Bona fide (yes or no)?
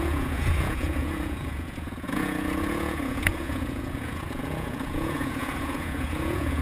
no